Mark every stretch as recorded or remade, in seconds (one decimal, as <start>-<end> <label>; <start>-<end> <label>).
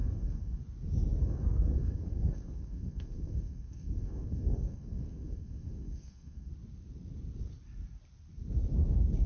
0.0-0.6 remade; 0.6-1.2 recorded; 1.2-6.5 remade; 6.5-9.3 recorded